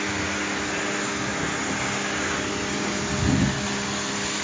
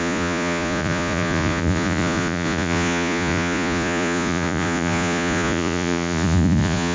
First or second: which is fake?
second